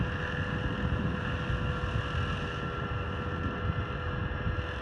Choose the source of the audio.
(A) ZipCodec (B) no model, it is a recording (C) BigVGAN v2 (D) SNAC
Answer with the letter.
B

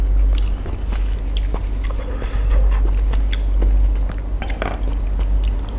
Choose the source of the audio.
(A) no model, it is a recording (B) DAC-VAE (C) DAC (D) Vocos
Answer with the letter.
A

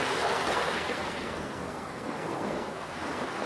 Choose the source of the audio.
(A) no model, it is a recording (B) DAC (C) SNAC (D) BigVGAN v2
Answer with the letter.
C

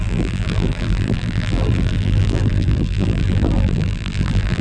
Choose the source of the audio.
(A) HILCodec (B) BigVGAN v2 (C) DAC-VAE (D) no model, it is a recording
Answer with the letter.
B